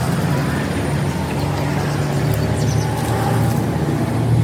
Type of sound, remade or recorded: recorded